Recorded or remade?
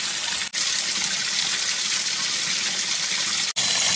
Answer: recorded